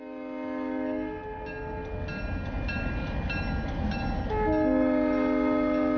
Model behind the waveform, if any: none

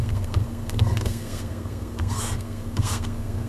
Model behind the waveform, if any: codec, SNAC